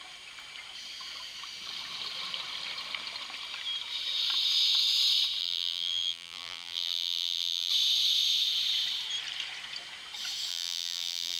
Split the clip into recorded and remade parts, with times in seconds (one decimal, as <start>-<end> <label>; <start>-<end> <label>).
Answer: 0.0-5.4 recorded; 5.4-7.7 remade; 7.7-10.5 recorded; 10.5-11.4 remade